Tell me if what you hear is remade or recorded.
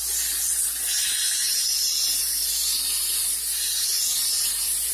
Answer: recorded